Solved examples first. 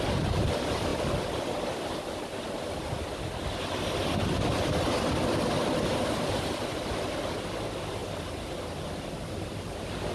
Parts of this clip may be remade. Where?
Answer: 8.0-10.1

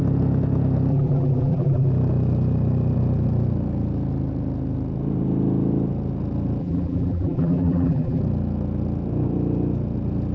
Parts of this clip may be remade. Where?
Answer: 0.9-1.9; 6.6-8.2

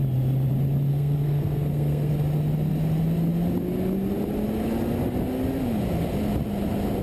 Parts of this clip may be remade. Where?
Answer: 0.9-2.1

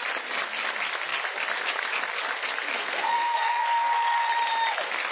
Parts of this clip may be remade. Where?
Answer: 2.7-4.3

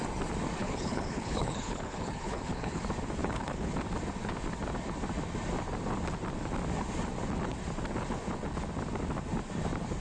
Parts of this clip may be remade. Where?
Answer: 0.6-2.8; 3.2-3.8

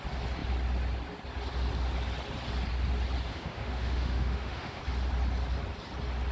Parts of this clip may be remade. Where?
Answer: 3.3-4.8